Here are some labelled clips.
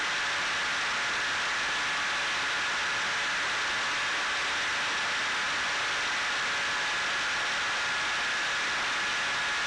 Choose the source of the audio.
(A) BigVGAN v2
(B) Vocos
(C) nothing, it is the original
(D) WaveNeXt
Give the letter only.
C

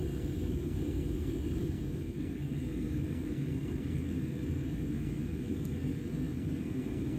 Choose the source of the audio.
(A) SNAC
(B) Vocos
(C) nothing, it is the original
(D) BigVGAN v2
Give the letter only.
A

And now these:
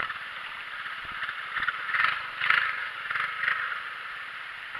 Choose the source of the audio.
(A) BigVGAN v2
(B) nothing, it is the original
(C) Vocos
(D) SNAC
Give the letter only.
B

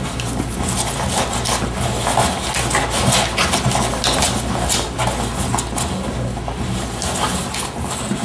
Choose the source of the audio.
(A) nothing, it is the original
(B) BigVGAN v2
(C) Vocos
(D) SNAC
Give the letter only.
A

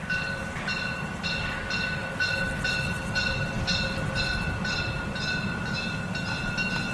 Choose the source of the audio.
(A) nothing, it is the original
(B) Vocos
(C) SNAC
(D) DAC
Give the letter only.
A